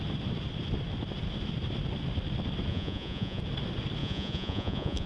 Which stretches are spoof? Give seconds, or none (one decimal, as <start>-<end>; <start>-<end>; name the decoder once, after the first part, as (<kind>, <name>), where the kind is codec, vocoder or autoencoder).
2.7-3.4 (vocoder, Vocos); 4.0-5.1